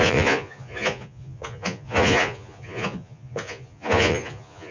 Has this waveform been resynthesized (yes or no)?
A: yes